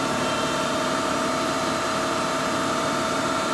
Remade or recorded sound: remade